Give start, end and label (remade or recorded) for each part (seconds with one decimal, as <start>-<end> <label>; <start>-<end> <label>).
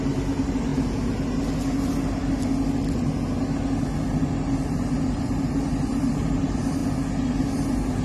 0.0-0.7 remade; 0.7-4.9 recorded; 4.9-6.8 remade; 6.8-8.0 recorded